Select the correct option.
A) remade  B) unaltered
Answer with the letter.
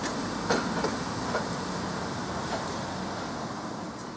B